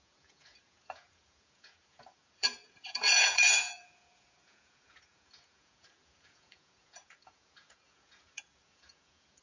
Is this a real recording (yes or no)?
no